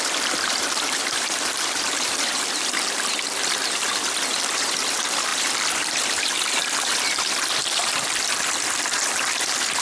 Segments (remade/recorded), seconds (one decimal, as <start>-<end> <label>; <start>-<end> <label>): 0.0-9.8 remade